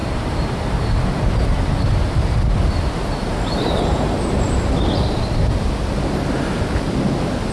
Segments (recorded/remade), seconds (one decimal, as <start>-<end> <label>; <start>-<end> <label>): 0.0-4.5 remade; 4.5-7.5 recorded